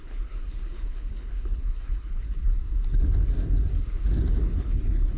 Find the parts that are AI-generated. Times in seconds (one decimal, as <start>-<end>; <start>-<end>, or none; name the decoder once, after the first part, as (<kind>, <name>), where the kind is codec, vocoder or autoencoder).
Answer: 0.0-2.6 (codec, HILCodec); 4.6-5.2